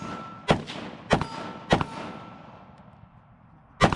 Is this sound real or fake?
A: real